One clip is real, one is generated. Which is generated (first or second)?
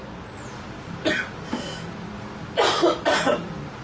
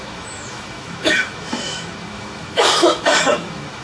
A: second